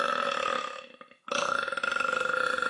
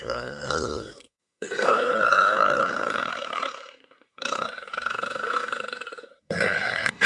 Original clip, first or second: first